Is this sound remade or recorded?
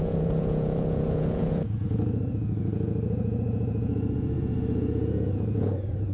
remade